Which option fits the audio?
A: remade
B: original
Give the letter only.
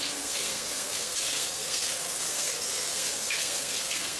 A